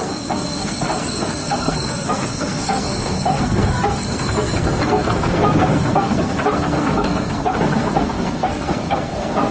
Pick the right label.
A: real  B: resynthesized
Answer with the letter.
B